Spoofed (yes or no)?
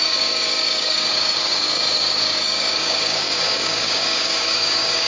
yes